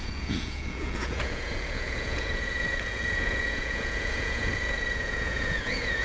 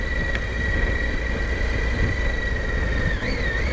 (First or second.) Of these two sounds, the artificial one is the first